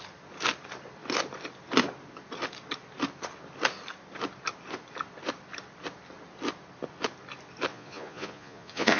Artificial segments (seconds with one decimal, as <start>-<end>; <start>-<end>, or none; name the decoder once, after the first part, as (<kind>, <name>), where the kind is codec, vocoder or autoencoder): 7.7-9.0 (vocoder, Vocos)